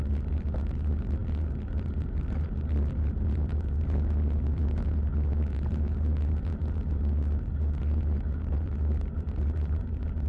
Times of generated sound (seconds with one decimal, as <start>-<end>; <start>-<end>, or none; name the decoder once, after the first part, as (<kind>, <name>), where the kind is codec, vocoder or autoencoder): none

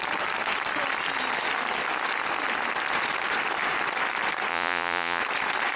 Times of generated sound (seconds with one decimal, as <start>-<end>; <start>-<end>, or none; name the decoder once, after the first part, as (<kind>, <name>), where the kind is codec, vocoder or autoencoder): 4.5-5.2 (vocoder, Vocos)

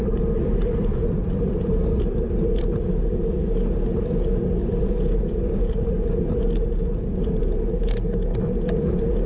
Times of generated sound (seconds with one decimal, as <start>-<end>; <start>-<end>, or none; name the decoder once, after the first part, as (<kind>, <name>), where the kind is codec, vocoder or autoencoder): 0.0-1.9 (vocoder, BigVGAN v2); 4.6-6.3

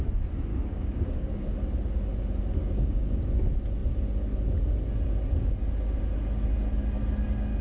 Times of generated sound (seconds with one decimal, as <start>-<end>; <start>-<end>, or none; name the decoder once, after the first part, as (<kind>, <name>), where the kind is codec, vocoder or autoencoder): 0.5-1.5 (codec, DAC); 2.6-3.2

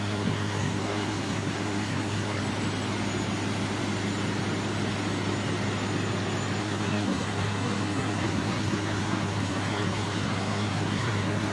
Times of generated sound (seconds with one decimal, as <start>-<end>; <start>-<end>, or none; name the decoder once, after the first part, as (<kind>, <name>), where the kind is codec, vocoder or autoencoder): 0.0-2.4 (codec, SNAC); 6.6-11.5

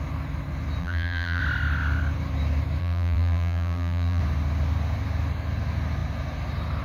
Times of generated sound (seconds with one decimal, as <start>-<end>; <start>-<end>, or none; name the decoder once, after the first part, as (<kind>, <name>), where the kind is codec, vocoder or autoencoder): 0.8-1.4 (vocoder, BigVGAN v2); 2.8-4.2

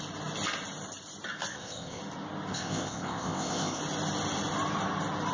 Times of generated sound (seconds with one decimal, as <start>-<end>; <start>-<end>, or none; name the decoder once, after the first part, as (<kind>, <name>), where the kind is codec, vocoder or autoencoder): 1.5-2.0 (codec, ZipCodec); 2.5-3.8